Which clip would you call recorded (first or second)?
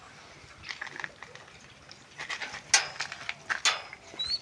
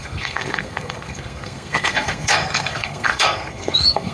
first